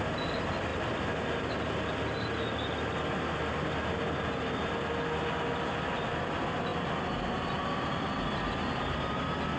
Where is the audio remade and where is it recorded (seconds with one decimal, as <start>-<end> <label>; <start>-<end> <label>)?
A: 0.0-9.6 recorded